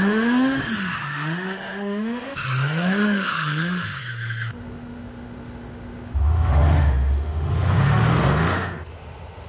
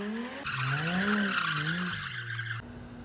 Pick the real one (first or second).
second